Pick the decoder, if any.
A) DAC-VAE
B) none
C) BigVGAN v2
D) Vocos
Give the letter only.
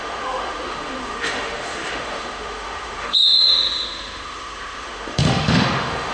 A